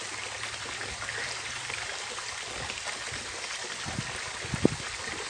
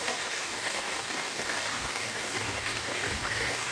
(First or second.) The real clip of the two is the first